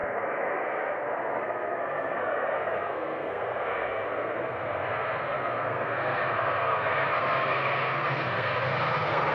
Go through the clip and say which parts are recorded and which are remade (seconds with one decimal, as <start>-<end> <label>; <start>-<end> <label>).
0.0-9.3 remade

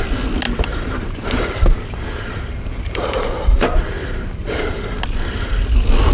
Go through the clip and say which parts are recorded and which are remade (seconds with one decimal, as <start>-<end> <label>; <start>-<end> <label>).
0.0-0.7 recorded; 0.7-1.6 remade; 1.6-2.3 recorded; 2.3-4.4 remade; 4.4-6.1 recorded

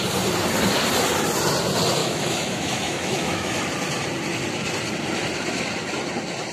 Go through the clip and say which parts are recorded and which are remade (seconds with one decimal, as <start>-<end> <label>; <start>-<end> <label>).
0.0-2.0 recorded; 2.0-3.6 remade; 3.6-6.5 recorded

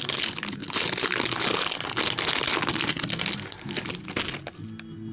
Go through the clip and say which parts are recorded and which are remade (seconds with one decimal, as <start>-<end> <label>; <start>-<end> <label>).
0.0-5.1 recorded

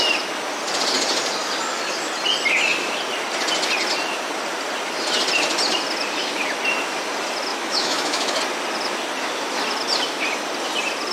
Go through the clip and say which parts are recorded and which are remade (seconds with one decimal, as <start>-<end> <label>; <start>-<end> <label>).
0.0-7.5 recorded; 7.5-8.4 remade; 8.4-11.1 recorded

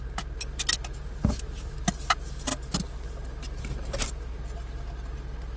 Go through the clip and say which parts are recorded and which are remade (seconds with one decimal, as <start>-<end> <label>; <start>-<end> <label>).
0.0-5.6 recorded